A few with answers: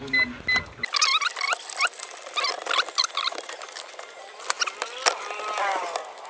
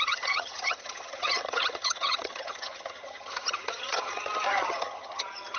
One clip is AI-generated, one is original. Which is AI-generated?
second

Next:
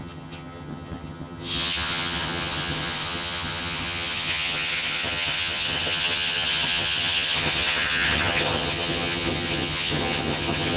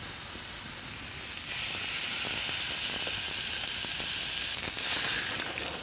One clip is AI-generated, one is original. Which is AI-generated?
first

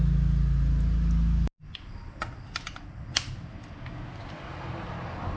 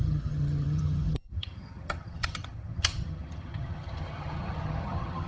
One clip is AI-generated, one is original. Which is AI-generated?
second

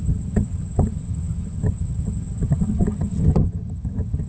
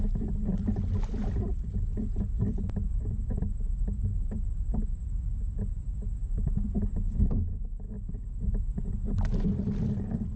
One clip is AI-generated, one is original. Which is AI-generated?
first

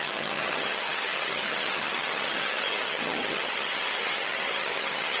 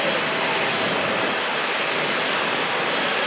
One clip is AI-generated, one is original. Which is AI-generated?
first